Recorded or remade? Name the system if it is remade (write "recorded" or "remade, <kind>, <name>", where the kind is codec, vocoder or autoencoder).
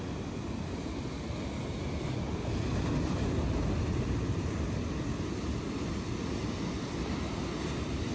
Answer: recorded